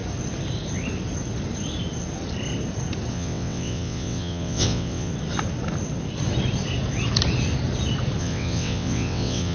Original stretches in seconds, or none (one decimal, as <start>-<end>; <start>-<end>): 0.0-3.1; 5.1-8.2